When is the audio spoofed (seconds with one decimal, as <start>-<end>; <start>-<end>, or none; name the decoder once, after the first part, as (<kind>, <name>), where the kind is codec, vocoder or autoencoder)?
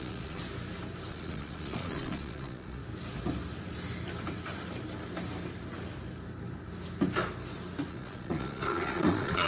0.0-0.4 (vocoder, Vocos); 1.1-2.8; 7.9-9.5